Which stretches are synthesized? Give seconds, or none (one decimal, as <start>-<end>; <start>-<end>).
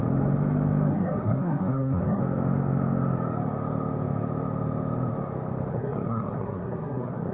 0.9-2.2; 5.7-7.3